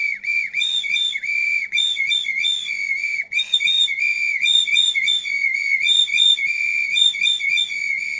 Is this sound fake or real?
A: fake